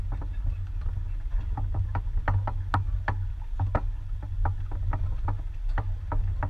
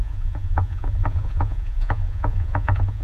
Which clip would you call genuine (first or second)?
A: first